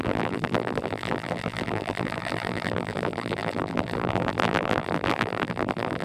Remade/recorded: remade